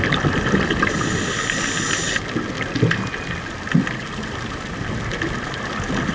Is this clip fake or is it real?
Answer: real